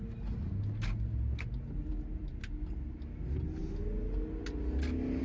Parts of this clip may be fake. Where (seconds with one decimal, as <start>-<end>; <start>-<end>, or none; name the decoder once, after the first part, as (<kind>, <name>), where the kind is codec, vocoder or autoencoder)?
none

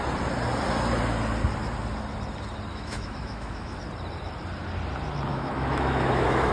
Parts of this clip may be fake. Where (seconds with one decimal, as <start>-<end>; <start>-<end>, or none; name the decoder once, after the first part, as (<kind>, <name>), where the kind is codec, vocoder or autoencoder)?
2.7-3.8 (autoencoder, DAC-VAE); 5.3-6.5

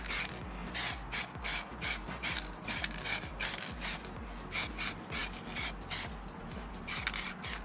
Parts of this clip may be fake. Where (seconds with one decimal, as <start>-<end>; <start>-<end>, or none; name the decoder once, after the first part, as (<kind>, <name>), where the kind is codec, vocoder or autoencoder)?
none

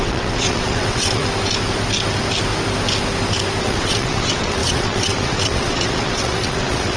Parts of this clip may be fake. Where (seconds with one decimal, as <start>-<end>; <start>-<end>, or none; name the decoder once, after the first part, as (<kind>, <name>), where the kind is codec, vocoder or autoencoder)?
0.0-1.2 (vocoder, WaveNeXt); 3.6-7.0